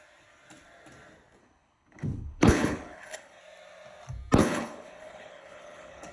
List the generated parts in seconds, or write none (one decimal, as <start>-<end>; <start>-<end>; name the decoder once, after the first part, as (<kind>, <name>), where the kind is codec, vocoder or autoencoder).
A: 1.4-3.4 (codec, HILCodec); 4.4-6.1